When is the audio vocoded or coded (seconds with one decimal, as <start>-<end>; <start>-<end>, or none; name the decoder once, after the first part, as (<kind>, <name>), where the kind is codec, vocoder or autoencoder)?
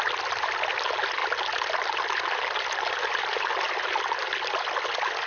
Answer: none